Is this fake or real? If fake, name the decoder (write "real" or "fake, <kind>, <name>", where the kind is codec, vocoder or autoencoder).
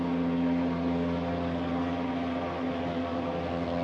real